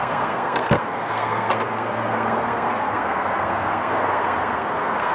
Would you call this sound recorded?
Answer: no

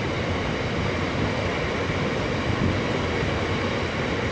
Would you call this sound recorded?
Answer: yes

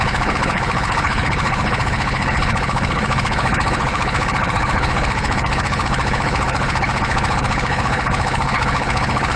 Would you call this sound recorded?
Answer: no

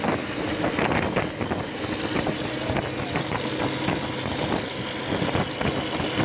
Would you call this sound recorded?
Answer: yes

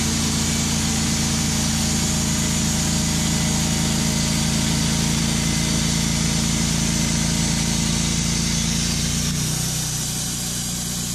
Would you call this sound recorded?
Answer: yes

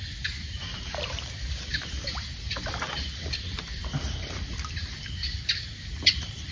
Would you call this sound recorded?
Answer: yes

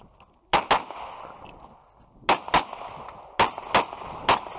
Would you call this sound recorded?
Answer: yes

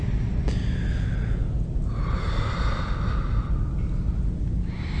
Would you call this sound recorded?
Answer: yes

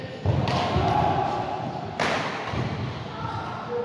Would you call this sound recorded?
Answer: yes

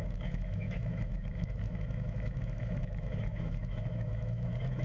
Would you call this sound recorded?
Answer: no